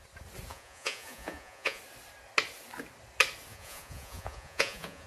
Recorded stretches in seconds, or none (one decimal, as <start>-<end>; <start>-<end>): 0.0-0.5; 1.8-3.5